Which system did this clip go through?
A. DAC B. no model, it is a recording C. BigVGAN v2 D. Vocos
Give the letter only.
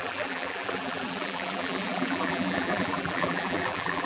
C